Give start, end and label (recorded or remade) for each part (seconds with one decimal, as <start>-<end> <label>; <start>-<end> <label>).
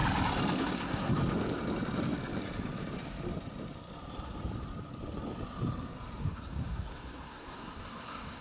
0.0-0.6 recorded; 0.6-1.2 remade; 1.2-6.2 recorded; 6.2-8.4 remade